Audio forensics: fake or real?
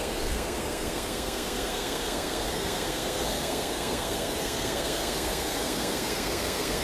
fake